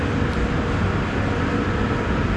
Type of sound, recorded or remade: remade